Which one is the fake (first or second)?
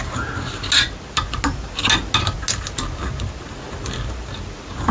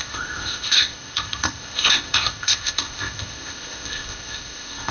second